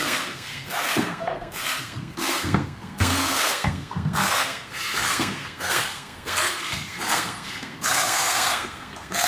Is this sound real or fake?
fake